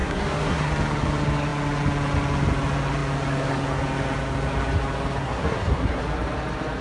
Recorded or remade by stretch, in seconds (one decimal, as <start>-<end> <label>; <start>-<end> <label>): 0.0-0.7 remade; 0.7-5.2 recorded; 5.2-6.0 remade; 6.0-6.8 recorded